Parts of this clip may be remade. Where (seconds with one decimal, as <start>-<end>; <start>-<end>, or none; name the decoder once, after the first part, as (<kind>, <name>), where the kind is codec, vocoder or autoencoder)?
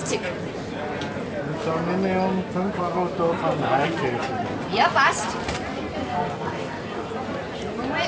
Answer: 6.0-7.1 (codec, SNAC)